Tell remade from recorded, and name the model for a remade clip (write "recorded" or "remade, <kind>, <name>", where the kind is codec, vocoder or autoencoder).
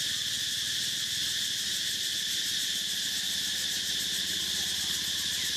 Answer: recorded